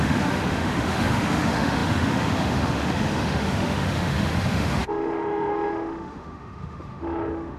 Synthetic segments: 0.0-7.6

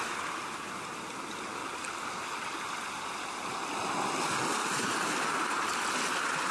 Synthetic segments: none

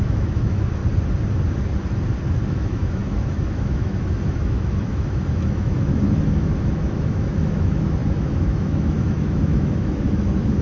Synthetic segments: 0.0-0.8; 2.5-10.6

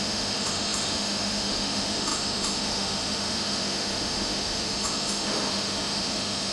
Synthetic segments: 0.0-6.5

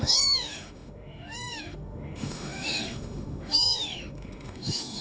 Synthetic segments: 0.0-5.0

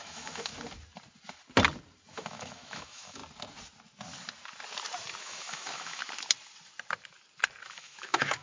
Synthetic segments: 0.0-0.5; 2.1-3.2; 5.2-6.0; 7.7-8.4